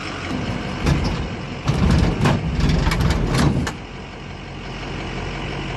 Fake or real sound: real